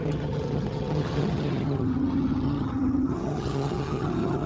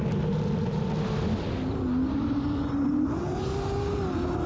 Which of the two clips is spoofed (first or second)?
first